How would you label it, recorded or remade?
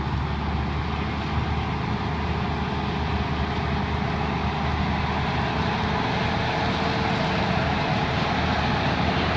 recorded